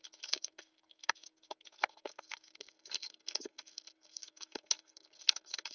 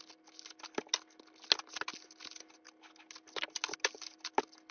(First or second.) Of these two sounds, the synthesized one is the first